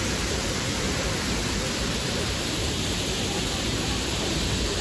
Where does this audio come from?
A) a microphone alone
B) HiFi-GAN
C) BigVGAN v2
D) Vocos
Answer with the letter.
C